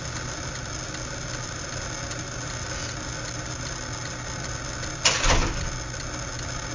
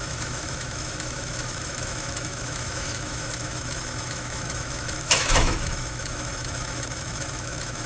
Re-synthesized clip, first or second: second